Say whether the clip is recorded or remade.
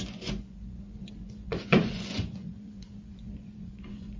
remade